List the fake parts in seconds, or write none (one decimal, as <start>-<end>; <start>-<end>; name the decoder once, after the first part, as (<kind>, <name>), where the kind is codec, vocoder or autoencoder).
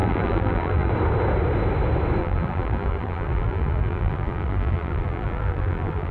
0.0-0.9 (vocoder, BigVGAN v2); 2.2-6.1